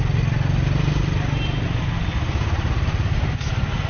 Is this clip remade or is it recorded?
recorded